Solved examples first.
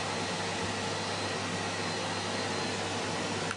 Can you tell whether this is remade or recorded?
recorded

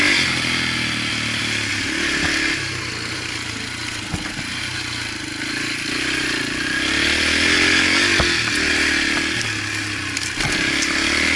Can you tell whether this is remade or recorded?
recorded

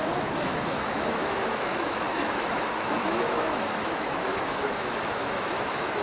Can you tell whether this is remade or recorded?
remade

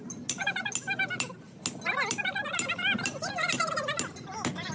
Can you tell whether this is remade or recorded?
recorded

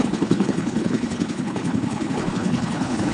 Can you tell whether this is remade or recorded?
remade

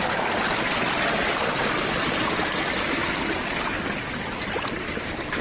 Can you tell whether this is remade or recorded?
recorded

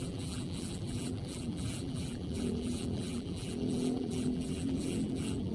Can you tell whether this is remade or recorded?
remade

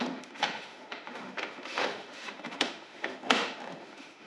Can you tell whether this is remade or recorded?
remade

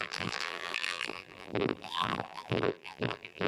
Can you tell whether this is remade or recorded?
remade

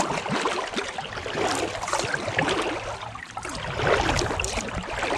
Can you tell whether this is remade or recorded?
remade